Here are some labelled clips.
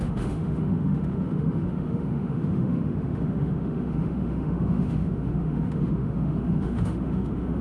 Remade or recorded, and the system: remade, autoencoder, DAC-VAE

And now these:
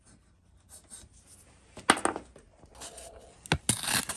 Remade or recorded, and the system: recorded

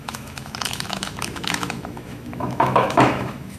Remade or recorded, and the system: remade, autoencoder, DAC-VAE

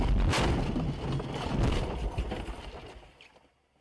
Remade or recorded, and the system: recorded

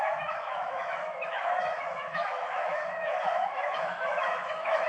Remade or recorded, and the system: remade, autoencoder, DAC-VAE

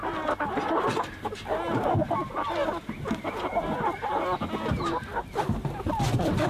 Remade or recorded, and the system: recorded